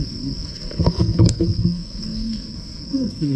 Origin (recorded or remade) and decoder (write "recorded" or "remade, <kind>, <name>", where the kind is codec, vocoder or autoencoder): remade, codec, SNAC